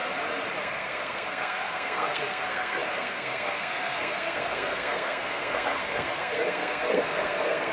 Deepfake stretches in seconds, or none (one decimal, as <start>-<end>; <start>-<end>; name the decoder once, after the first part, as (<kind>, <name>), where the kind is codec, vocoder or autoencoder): 0.6-7.7 (codec, SNAC)

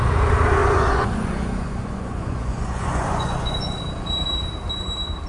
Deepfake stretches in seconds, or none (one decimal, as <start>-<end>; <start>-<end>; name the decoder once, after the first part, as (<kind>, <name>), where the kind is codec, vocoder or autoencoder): 0.6-3.8 (vocoder, Vocos)

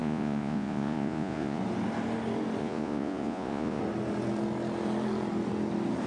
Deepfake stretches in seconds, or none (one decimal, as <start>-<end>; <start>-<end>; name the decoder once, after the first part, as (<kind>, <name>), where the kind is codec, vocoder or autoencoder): 0.0-1.6 (vocoder, Vocos); 2.6-3.8

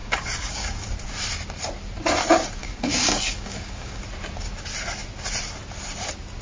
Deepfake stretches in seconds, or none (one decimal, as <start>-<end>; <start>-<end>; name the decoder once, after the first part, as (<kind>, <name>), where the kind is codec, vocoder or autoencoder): 0.0-0.9 (codec, DAC); 2.6-4.0

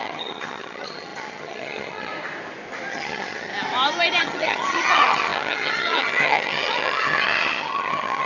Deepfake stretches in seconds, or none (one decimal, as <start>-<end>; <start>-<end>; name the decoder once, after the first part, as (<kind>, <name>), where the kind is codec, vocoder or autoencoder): 0.0-2.1 (vocoder, HiFi-GAN); 2.9-3.5; 4.2-8.3

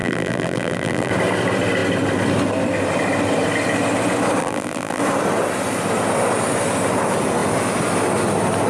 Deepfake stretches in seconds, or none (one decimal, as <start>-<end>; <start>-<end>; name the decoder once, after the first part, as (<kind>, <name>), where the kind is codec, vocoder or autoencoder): 0.0-1.1 (vocoder, BigVGAN v2); 4.4-5.0

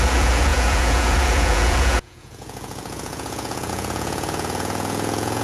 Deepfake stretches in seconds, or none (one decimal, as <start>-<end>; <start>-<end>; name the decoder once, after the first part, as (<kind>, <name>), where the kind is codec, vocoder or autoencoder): 0.0-5.4 (vocoder, Vocos)

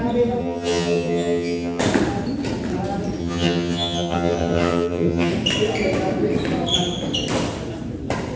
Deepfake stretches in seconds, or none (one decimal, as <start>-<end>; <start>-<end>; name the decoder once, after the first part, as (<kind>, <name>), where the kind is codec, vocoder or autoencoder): 0.4-1.8 (vocoder, HiFi-GAN); 3.2-5.3